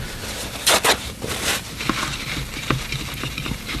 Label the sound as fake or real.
real